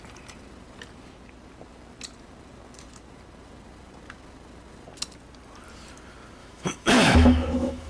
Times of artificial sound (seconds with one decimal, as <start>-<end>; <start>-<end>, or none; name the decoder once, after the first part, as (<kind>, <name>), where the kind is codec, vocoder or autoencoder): 6.4-7.9 (autoencoder, DAC-VAE)